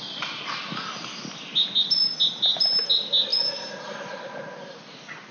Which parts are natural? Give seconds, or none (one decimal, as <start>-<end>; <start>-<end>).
0.0-5.3